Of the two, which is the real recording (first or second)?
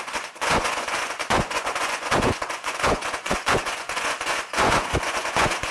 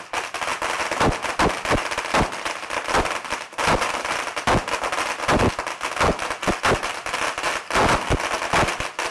second